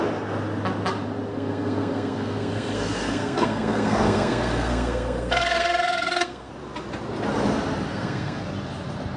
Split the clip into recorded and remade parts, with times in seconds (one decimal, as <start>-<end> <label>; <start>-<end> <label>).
0.0-1.3 recorded; 1.3-6.5 remade; 6.5-7.9 recorded; 7.9-8.4 remade; 8.4-9.2 recorded